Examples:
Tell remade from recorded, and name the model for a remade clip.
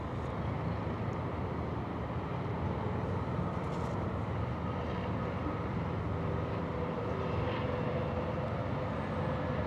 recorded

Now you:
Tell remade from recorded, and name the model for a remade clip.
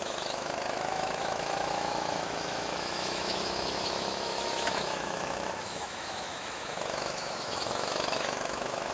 remade, autoencoder, DAC-VAE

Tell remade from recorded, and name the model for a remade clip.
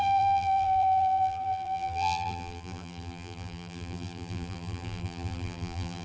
remade, vocoder, BigVGAN v2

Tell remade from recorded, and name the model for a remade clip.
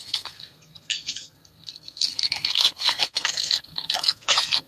remade, codec, SNAC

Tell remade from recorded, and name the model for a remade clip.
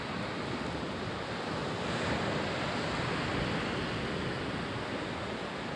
recorded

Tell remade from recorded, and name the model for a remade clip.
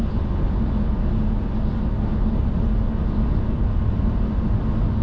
recorded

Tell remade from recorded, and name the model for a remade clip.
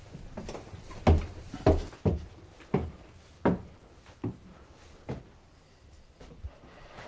recorded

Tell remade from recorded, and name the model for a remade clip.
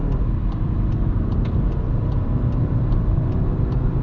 remade, vocoder, BigVGAN v2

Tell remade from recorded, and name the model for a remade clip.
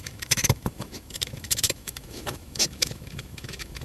remade, autoencoder, DAC-VAE